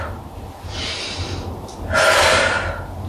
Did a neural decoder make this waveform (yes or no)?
no